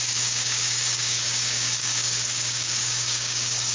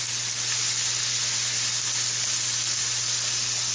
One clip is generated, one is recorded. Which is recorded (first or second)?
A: second